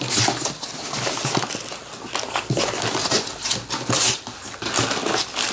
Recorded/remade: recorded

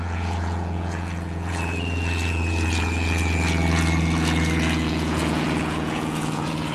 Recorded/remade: remade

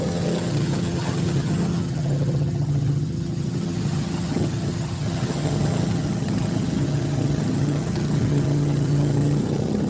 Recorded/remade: remade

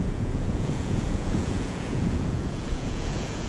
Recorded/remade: remade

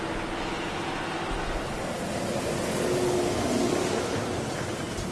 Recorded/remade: recorded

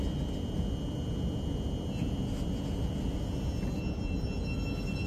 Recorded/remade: recorded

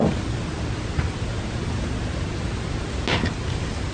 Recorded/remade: recorded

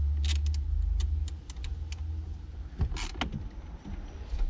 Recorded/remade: recorded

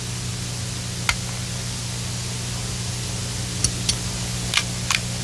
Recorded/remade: recorded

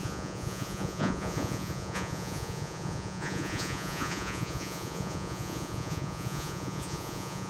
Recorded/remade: remade